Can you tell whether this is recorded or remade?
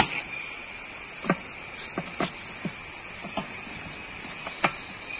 recorded